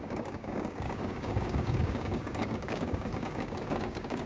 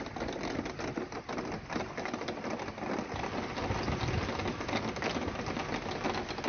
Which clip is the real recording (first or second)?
second